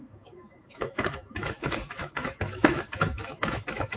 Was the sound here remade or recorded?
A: remade